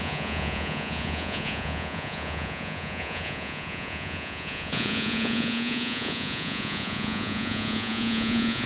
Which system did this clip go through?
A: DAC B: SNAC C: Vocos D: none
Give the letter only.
C